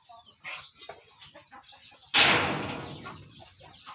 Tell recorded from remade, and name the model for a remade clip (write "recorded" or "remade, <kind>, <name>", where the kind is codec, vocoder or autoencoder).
recorded